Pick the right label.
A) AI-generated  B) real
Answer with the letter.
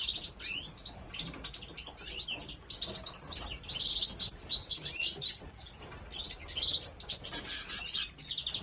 B